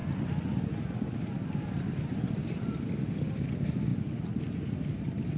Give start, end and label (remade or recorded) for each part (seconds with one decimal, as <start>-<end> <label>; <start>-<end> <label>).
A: 0.0-5.4 recorded